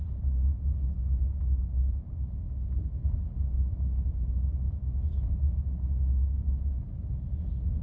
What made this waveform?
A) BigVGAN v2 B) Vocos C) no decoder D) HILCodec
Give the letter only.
C